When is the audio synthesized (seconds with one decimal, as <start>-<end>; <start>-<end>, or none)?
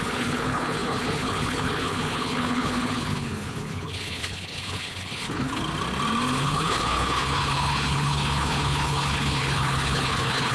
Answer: 0.0-5.6; 6.4-10.5